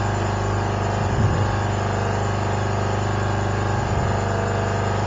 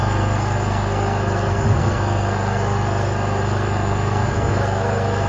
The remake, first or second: second